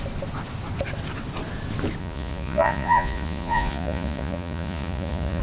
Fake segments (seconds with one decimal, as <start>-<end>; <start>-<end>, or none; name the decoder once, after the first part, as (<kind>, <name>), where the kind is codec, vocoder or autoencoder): 2.0-5.4 (vocoder, Vocos)